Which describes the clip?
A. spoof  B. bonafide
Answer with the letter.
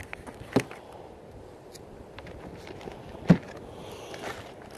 B